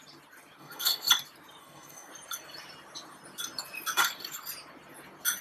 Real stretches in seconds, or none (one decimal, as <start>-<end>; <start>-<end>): 0.0-0.6; 1.1-1.6; 2.1-5.4